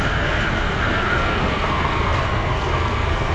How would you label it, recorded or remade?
remade